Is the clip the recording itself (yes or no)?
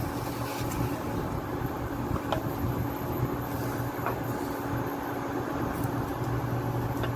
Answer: yes